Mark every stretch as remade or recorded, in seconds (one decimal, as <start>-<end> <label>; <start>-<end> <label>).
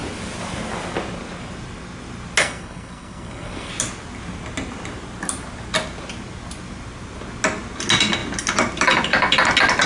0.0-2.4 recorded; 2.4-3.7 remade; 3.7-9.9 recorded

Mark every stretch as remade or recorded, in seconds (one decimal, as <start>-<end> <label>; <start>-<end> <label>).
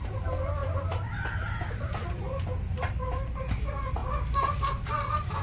0.0-5.4 recorded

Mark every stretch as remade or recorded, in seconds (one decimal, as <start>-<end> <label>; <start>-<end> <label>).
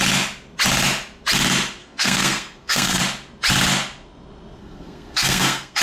0.0-1.8 recorded; 1.8-3.0 remade; 3.0-4.6 recorded; 4.6-5.8 remade